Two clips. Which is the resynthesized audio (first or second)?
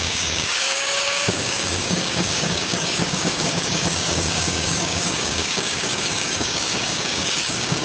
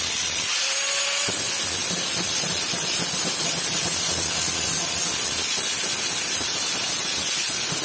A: first